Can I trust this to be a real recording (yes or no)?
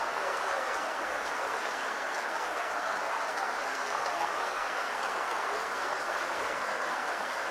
no